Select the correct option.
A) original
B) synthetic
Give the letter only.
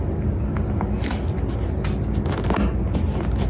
A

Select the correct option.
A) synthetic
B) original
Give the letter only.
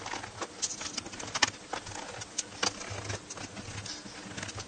B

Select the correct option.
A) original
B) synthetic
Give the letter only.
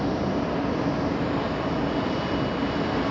A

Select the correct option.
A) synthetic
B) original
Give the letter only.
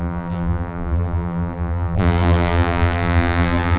A